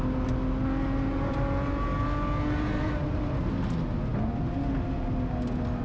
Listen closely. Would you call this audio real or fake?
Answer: real